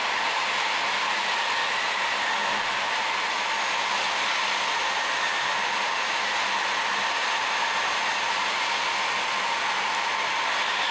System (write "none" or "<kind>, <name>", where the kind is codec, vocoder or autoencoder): none